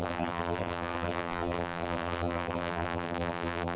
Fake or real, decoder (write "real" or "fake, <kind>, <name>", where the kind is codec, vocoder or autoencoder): fake, vocoder, BigVGAN v2